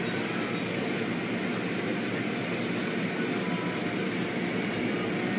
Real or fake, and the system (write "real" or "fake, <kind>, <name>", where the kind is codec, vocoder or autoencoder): real